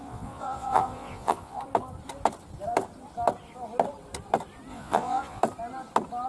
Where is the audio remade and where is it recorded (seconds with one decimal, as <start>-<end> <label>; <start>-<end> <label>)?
0.0-1.6 remade; 1.6-4.7 recorded; 4.7-5.4 remade; 5.4-6.3 recorded